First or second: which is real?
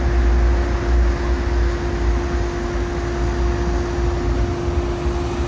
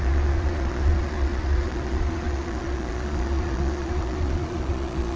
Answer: first